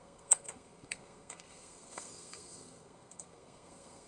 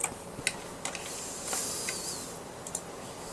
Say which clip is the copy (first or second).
first